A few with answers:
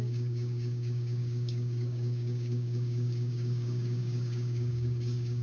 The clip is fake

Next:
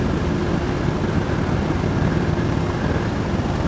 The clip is real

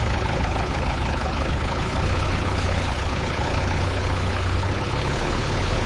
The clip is fake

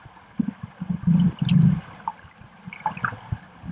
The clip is real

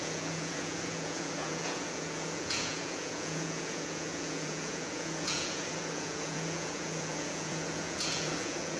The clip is fake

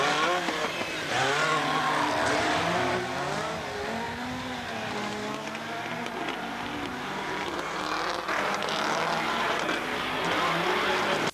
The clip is real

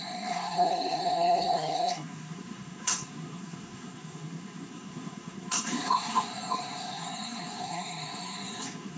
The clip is fake